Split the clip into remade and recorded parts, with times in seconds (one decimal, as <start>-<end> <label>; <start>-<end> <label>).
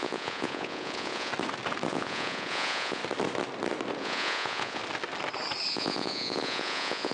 0.0-1.3 remade; 1.3-1.9 recorded; 1.9-3.0 remade; 3.0-4.0 recorded; 4.0-4.8 remade; 4.8-5.7 recorded; 5.7-7.1 remade